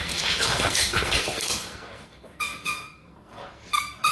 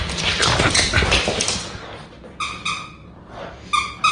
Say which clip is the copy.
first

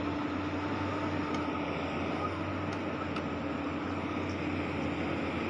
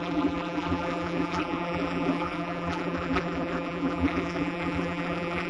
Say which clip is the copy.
second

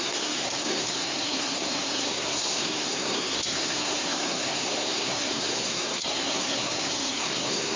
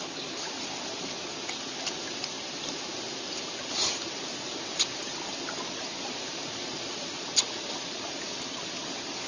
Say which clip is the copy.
first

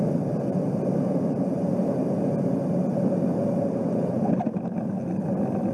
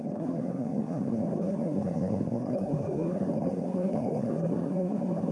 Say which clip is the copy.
second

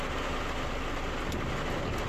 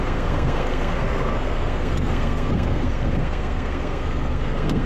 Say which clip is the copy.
second